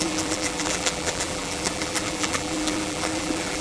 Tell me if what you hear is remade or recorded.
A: remade